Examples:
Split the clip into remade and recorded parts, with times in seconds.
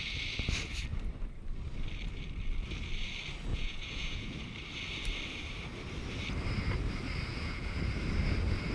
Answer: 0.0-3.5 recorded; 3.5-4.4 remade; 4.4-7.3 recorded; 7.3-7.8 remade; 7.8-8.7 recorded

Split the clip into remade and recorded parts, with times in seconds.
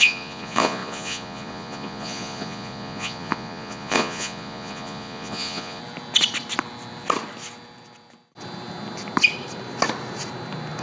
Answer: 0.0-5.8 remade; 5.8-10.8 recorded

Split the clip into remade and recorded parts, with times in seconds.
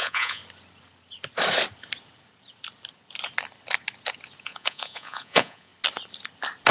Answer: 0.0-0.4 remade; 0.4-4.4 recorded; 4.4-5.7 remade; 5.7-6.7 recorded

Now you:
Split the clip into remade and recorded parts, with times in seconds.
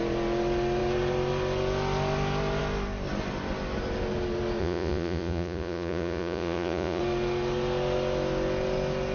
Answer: 0.0-4.6 recorded; 4.6-7.0 remade; 7.0-9.1 recorded